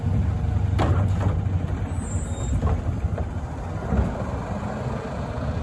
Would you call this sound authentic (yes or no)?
yes